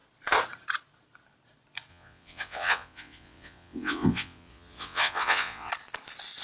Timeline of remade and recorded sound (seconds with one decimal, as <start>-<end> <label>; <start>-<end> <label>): 0.0-1.9 recorded; 1.9-5.7 remade; 5.7-6.4 recorded